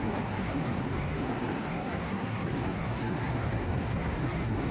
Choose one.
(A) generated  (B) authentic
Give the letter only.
A